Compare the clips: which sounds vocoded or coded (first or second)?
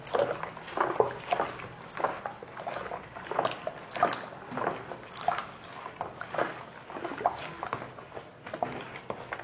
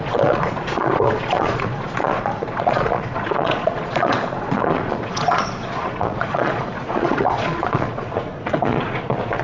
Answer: second